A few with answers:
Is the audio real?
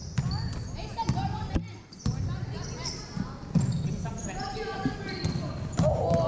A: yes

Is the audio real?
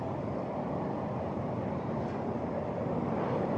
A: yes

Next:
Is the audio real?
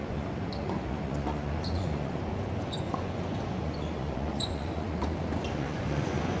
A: no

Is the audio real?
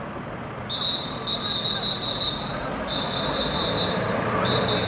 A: yes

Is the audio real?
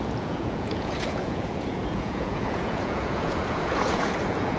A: no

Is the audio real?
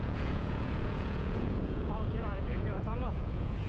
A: no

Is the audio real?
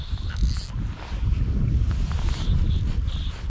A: yes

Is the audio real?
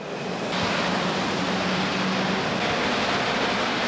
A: yes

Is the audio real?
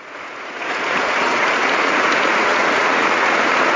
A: no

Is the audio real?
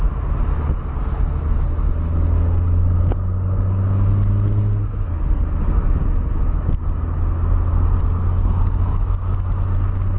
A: yes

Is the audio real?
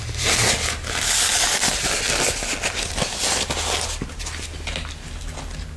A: yes